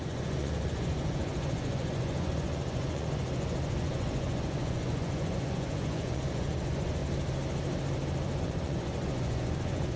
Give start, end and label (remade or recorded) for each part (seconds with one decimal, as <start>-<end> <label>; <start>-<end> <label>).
0.0-7.0 remade; 7.0-8.4 recorded; 8.4-10.0 remade